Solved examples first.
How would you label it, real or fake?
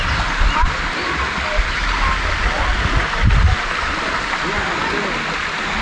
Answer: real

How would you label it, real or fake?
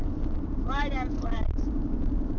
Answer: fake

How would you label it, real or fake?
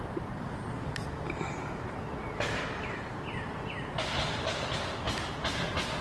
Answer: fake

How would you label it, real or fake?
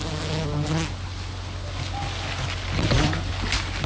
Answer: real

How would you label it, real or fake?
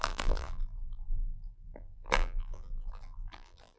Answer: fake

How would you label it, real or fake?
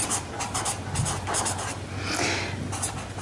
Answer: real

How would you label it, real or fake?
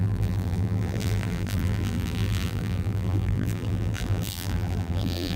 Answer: fake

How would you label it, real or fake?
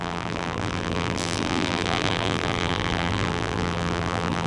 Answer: fake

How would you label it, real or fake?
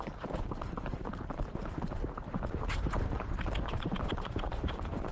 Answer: fake